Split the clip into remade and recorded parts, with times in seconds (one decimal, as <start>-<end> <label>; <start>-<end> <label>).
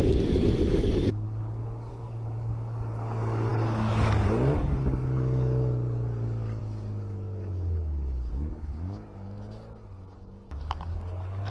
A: 0.0-11.5 remade